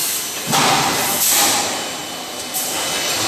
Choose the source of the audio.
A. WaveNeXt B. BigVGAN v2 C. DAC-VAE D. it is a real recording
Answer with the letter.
D